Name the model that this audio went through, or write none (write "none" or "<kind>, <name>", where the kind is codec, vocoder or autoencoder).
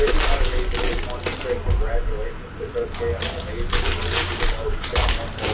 none